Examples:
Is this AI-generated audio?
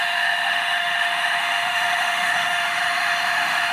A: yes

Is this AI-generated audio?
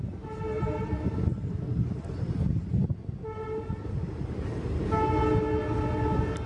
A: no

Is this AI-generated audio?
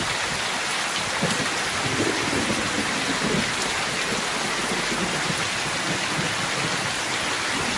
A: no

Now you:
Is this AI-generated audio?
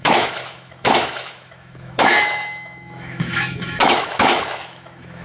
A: yes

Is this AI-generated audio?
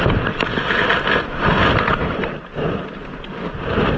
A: no